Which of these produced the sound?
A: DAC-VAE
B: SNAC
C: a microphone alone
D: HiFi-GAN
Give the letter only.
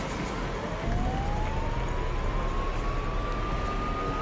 C